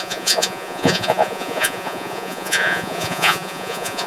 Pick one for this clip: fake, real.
fake